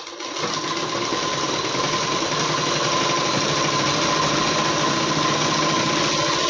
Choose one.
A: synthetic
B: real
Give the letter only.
B